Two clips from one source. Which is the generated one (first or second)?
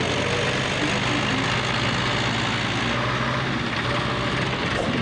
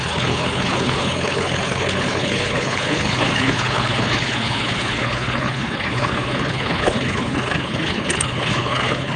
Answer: second